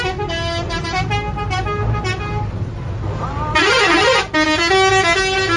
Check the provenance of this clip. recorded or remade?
recorded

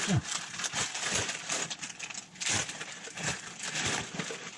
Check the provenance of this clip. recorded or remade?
recorded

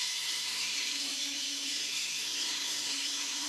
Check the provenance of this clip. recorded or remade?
remade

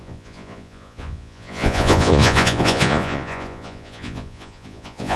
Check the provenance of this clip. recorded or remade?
remade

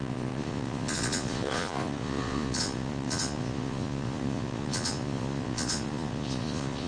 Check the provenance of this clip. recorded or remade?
remade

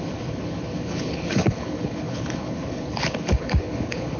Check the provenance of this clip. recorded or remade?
remade